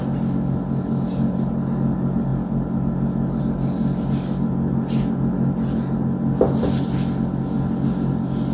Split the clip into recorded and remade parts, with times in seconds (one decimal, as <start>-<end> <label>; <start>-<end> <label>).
0.0-8.5 recorded